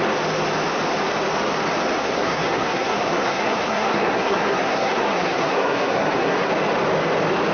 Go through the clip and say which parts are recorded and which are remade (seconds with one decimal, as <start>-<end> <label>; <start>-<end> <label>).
0.0-2.0 recorded; 2.0-6.5 remade; 6.5-7.5 recorded